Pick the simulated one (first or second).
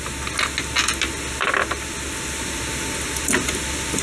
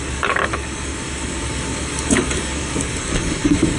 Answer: second